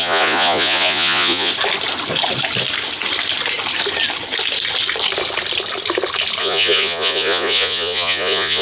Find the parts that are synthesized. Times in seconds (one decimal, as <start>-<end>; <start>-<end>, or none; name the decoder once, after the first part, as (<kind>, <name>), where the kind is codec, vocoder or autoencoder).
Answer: 0.0-1.5 (vocoder, Vocos); 6.4-8.6